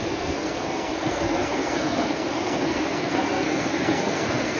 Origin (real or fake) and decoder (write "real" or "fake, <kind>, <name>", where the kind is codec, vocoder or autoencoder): fake, codec, SNAC